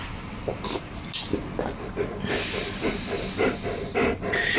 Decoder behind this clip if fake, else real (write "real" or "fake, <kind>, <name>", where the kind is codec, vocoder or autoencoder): real